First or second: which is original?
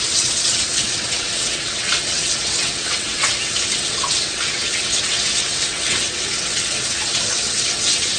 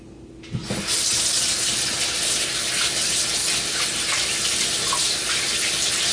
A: second